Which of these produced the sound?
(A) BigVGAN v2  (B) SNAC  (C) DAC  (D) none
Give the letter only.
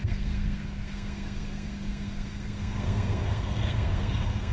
B